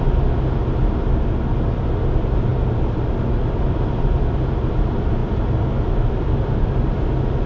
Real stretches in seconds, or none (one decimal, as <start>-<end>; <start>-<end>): 0.0-7.5